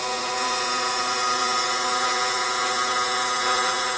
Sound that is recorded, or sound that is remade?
remade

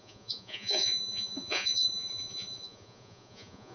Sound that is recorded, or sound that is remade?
remade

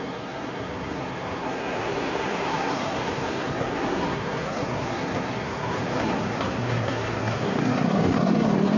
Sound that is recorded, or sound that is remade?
remade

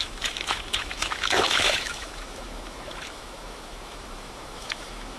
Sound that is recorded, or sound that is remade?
remade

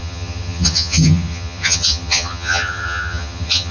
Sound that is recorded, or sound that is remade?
remade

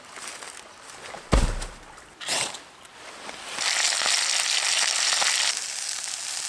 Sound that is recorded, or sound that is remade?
recorded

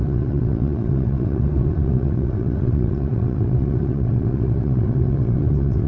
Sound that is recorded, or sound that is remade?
remade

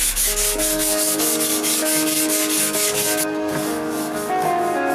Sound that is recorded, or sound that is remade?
remade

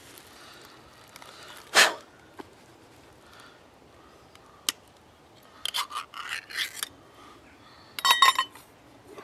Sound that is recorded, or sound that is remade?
recorded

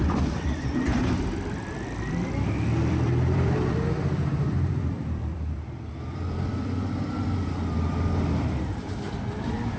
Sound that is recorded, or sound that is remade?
remade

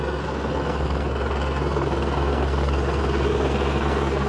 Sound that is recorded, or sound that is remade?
remade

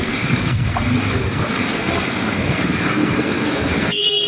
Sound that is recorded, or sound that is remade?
remade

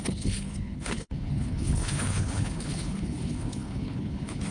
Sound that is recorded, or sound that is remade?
remade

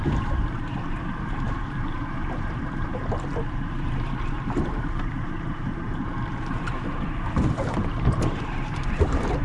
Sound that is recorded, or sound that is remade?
remade